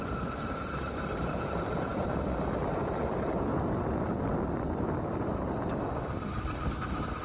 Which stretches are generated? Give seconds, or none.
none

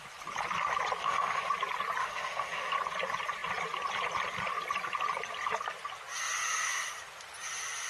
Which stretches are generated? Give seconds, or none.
1.0-1.5 (autoencoder, DAC-VAE); 2.0-2.7

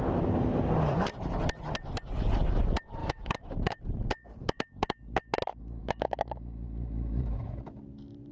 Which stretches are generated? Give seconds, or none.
3.0-3.8 (autoencoder, DAC-VAE); 5.8-7.8

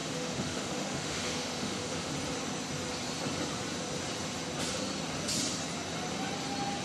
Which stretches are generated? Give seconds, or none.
0.0-2.1 (autoencoder, DAC-VAE)

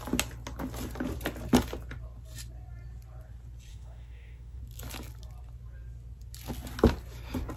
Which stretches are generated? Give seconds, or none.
3.7-4.6 (autoencoder, DAC-VAE)

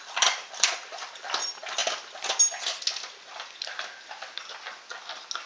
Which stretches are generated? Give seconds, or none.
none

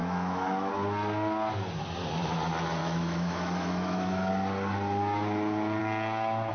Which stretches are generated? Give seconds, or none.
0.0-0.7 (autoencoder, DAC-VAE); 2.8-4.3

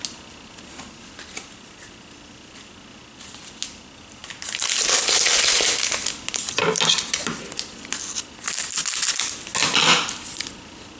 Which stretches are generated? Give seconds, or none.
none